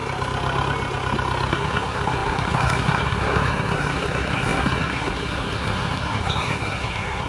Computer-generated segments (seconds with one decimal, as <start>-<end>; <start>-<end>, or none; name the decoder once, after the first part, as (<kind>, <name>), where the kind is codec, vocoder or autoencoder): 1.5-7.3 (codec, SNAC)